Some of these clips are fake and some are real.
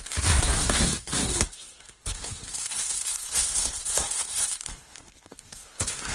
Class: fake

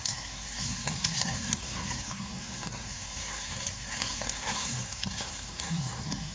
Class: fake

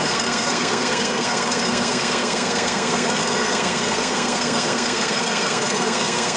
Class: fake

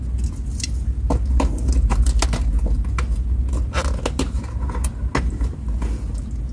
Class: real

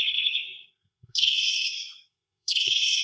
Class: fake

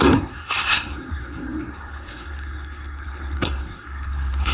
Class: fake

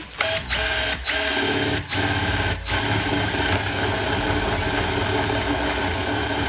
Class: real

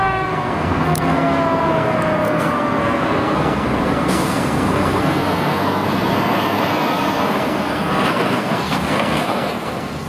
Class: fake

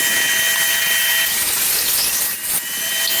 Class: real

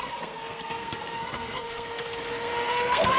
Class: fake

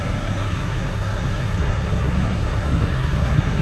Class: fake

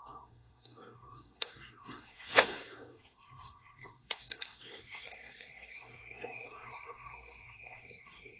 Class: fake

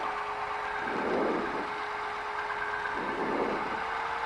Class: real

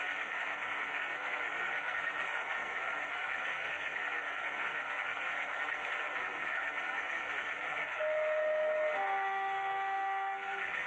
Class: fake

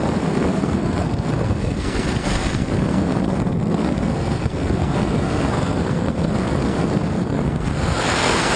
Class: fake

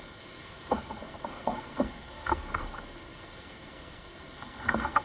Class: fake